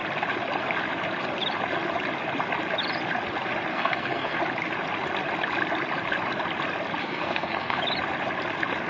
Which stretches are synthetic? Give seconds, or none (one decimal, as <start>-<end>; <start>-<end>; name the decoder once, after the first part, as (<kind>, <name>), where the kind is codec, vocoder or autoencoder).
3.7-4.4 (codec, SNAC); 7.0-7.8